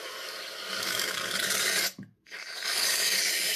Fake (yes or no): yes